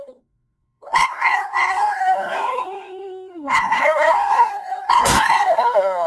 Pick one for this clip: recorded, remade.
remade